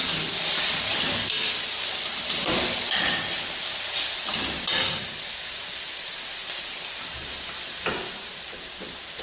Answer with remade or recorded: recorded